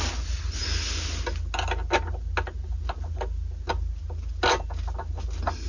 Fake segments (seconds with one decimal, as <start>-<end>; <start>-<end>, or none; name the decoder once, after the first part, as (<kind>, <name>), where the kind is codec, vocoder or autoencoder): none